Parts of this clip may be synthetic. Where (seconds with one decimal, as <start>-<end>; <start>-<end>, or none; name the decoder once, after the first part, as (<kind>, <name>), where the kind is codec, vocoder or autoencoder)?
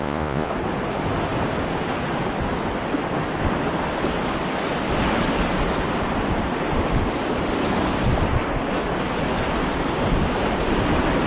0.0-0.5 (vocoder, Vocos)